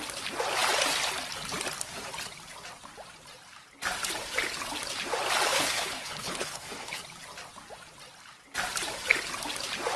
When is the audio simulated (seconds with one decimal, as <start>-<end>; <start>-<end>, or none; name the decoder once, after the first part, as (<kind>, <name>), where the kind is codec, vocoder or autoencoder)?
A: 5.5-7.0 (codec, HILCodec)